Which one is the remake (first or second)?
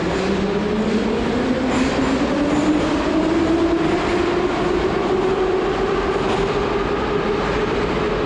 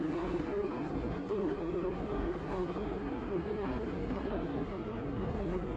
second